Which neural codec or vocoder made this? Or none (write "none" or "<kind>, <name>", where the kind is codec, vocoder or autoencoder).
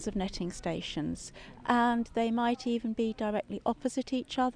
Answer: none